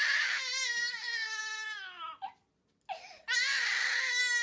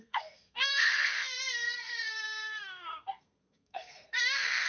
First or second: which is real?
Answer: first